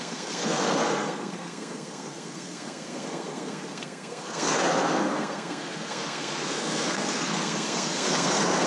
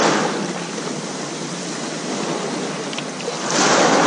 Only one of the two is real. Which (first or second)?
second